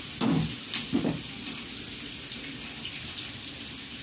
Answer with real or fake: real